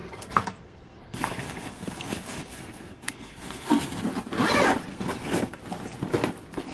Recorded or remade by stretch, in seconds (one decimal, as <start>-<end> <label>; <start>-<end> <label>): 0.0-4.0 remade; 4.0-4.9 recorded; 4.9-5.6 remade; 5.6-6.7 recorded